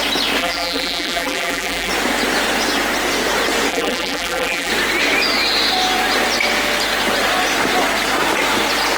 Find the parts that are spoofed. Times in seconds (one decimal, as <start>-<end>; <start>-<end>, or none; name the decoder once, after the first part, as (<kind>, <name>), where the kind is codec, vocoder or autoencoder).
0.4-1.9 (vocoder, BigVGAN v2); 3.7-4.7